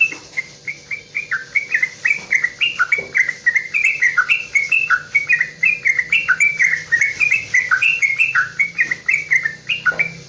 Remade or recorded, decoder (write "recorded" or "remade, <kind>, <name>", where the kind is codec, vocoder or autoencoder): remade, vocoder, BigVGAN v2